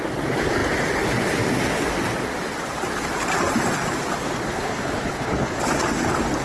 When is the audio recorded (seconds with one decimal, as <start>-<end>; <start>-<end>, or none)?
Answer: 0.0-4.5; 5.6-6.4